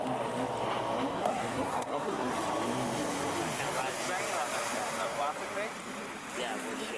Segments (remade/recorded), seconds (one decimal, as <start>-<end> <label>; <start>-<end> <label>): 0.0-1.1 recorded; 1.1-2.3 remade; 2.3-7.0 recorded